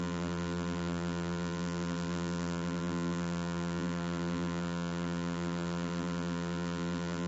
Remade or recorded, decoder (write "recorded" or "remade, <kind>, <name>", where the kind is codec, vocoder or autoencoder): remade, vocoder, BigVGAN v2